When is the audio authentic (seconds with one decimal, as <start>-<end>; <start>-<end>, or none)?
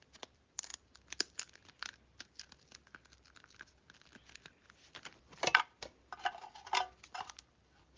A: 0.0-8.0